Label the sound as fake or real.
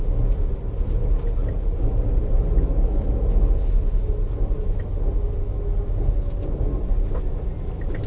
real